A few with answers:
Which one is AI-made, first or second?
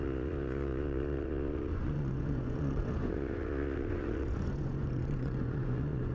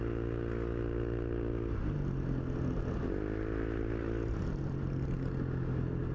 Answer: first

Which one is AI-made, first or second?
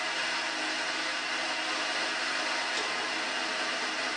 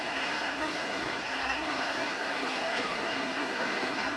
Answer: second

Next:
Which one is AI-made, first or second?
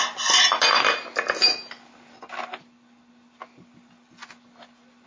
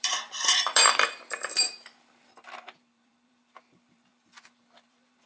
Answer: second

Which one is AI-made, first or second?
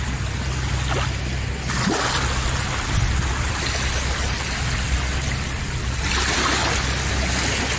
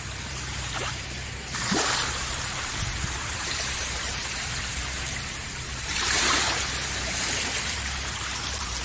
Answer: second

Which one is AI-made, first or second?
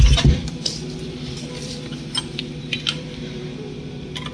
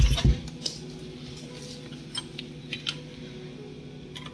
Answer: first